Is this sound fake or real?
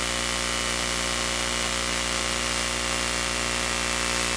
real